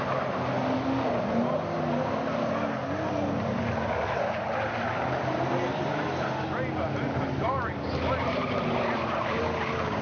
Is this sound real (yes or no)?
yes